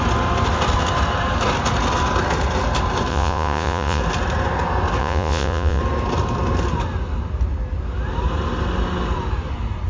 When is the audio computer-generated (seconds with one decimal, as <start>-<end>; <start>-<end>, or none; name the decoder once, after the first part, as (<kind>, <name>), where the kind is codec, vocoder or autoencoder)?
3.1-4.0 (vocoder, Vocos); 5.0-5.8